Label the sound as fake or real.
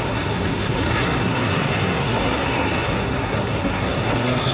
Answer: fake